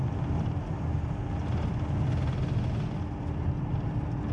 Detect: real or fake real